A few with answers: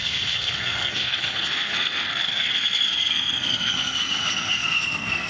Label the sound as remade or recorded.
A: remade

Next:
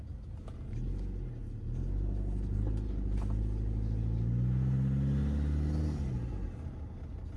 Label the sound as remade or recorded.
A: recorded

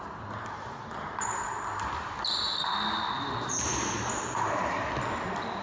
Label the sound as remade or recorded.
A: recorded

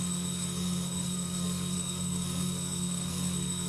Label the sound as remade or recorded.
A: remade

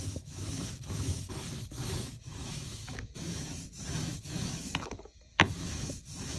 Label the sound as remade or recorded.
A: remade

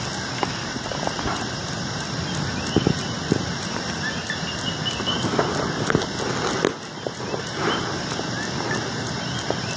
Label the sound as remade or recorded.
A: recorded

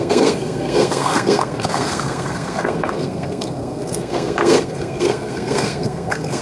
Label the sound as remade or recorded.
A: remade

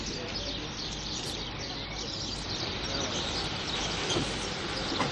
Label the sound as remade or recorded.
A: remade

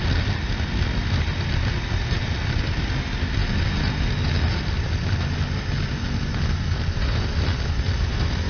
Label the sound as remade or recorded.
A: recorded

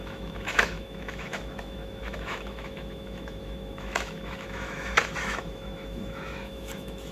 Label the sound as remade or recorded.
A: remade